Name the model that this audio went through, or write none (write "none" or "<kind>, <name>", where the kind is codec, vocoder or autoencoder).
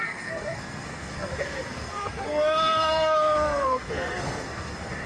codec, SNAC